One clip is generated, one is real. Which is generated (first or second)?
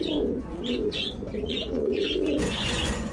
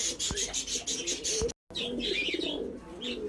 first